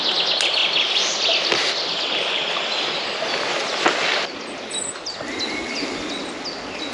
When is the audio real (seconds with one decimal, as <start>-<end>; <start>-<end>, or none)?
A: 0.0-6.9